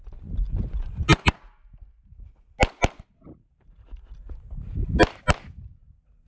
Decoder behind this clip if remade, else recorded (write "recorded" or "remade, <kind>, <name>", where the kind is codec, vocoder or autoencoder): recorded